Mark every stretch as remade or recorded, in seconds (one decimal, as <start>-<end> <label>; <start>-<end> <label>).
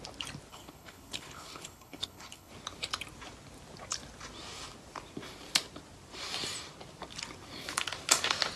0.0-0.5 recorded; 0.5-2.5 remade; 2.5-8.6 recorded